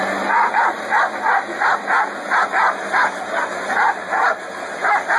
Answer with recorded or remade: recorded